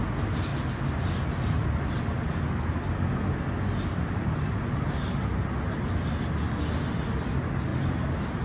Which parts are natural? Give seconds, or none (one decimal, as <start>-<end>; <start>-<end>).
0.0-8.4